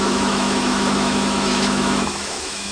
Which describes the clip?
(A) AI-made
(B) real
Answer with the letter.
A